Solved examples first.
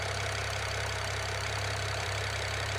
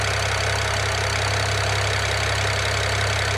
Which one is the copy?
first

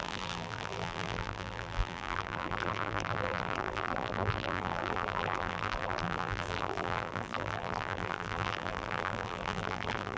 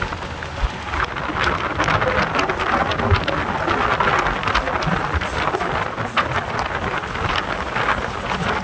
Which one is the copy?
first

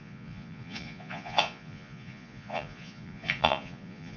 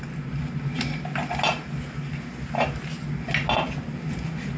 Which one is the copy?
first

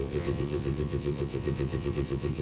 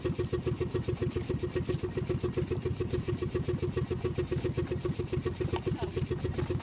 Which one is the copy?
first